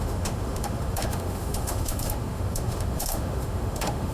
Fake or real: fake